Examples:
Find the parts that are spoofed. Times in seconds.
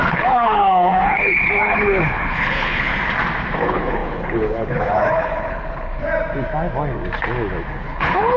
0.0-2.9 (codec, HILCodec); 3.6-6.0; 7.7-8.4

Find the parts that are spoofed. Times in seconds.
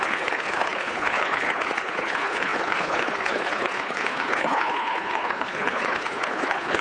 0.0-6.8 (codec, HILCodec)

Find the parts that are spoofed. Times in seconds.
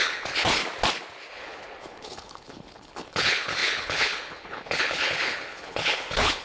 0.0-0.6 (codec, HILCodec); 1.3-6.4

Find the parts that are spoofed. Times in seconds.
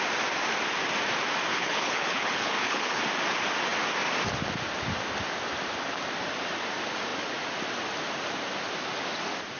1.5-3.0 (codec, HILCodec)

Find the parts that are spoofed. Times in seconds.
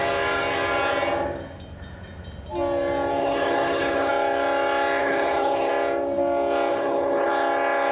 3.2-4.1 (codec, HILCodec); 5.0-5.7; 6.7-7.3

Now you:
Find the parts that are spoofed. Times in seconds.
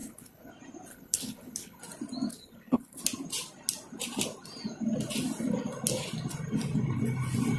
0.0-0.5 (codec, HILCodec); 0.9-1.8; 2.3-3.0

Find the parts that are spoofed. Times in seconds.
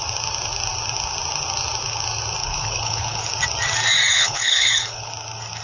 2.4-3.2 (codec, HILCodec); 4.1-5.1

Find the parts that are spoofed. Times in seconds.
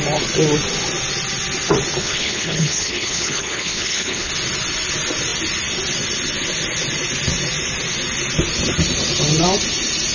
2.0-4.3 (codec, HILCodec)